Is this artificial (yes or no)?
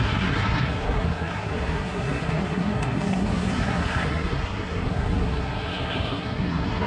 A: yes